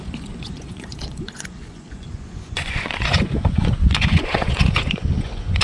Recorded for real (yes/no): no